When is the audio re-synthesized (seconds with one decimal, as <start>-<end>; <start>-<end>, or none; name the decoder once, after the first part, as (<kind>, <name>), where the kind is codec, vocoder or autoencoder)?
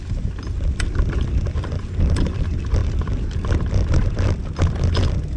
none